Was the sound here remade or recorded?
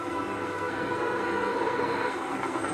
remade